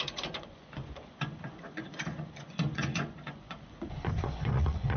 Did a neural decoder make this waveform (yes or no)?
yes